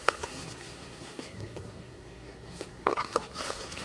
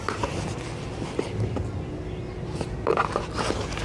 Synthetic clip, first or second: first